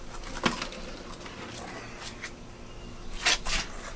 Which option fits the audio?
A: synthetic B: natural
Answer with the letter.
B